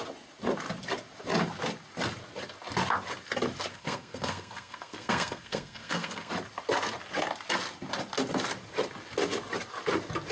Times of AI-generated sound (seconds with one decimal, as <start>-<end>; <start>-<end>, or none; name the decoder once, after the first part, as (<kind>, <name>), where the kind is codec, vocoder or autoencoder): 3.7-6.3 (codec, SNAC)